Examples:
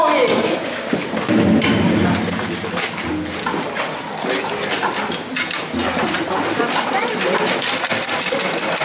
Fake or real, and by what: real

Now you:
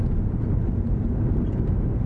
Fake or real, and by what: real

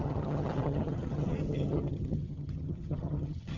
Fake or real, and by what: fake, vocoder, HiFi-GAN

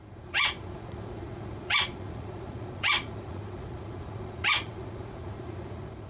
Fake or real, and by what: fake, vocoder, Vocos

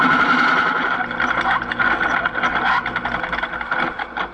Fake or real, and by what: real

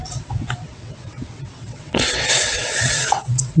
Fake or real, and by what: fake, vocoder, WaveNeXt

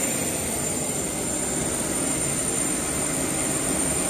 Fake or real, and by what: real